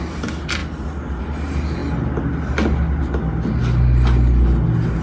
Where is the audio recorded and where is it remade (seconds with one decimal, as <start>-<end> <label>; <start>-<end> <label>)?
0.0-5.0 recorded